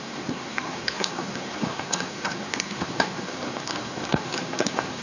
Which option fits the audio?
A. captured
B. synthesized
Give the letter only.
B